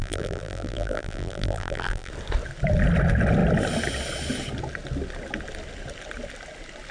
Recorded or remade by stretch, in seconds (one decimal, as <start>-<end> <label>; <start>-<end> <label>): 0.0-2.1 remade; 2.1-6.9 recorded